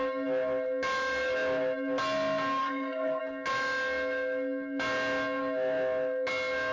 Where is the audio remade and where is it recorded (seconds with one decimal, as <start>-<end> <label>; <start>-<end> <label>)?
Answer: 0.0-2.6 recorded; 2.6-3.2 remade; 3.2-6.7 recorded